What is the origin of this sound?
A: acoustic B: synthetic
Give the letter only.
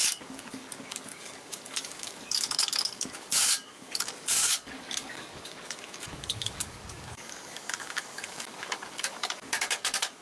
B